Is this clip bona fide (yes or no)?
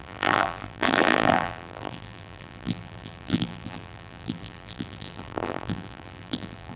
no